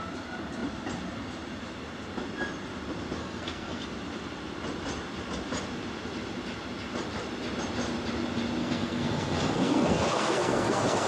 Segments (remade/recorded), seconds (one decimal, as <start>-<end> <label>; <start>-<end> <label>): 0.0-3.2 recorded; 3.2-3.8 remade; 3.8-8.6 recorded; 8.6-11.1 remade